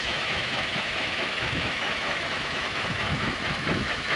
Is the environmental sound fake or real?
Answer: fake